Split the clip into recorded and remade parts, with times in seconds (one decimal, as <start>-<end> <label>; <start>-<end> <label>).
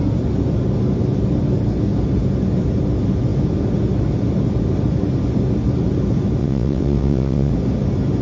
0.0-6.4 recorded; 6.4-7.5 remade; 7.5-8.2 recorded